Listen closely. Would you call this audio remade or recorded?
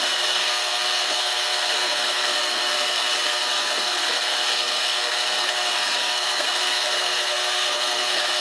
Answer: remade